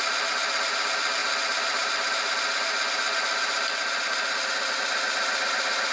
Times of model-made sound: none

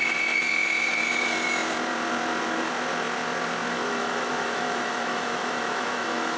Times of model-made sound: 3.7-6.4 (autoencoder, DAC-VAE)